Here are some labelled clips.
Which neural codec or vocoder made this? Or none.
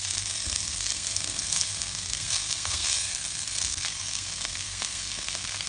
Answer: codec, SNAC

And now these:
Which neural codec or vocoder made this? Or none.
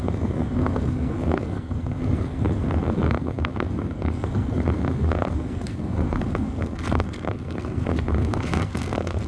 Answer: codec, SNAC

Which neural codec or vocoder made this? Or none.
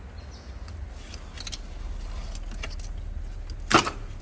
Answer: none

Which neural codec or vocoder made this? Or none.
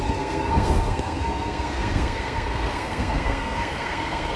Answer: codec, SNAC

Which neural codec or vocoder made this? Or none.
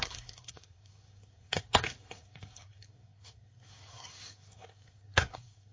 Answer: codec, SNAC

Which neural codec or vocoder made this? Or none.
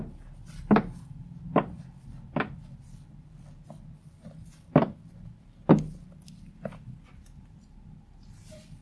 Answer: none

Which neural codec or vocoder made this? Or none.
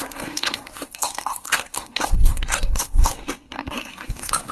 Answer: codec, SNAC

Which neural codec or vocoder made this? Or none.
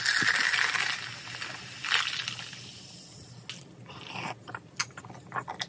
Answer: none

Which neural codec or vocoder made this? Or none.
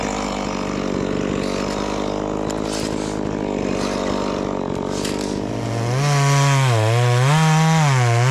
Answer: none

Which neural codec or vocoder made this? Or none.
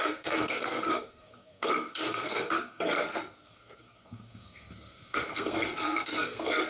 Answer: codec, SNAC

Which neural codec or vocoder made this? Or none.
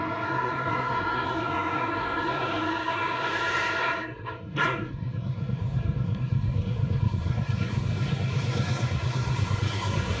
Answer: codec, SNAC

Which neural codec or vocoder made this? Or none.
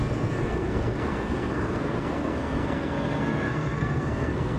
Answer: codec, SNAC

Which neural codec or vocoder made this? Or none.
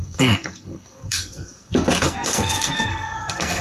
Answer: codec, SNAC